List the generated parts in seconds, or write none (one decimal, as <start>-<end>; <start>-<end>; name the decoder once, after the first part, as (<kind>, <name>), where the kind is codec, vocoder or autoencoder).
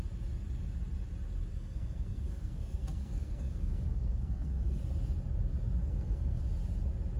1.5-4.8 (codec, SNAC); 5.8-6.4